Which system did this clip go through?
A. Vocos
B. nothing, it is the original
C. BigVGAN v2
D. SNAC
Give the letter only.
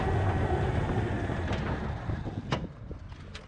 B